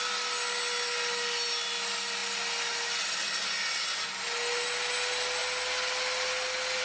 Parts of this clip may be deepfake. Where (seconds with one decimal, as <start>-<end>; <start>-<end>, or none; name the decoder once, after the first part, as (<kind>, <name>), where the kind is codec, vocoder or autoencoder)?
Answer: none

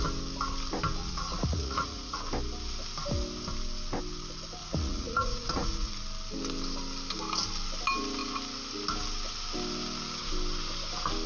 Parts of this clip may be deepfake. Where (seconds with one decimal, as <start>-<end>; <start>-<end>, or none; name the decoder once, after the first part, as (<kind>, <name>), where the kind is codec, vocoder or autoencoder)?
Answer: 1.0-2.2 (vocoder, Vocos); 4.6-5.9